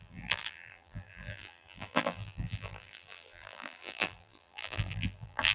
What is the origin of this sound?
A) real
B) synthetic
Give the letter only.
B